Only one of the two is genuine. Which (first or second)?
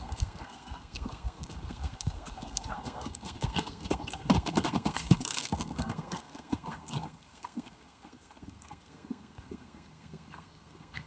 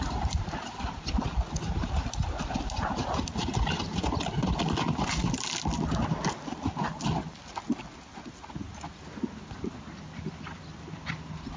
second